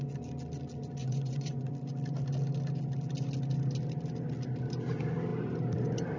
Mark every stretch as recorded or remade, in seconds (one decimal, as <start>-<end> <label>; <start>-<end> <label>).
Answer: 0.0-1.0 recorded; 1.0-1.7 remade; 1.7-6.2 recorded